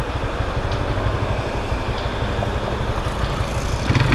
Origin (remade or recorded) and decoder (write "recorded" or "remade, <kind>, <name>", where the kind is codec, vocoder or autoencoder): recorded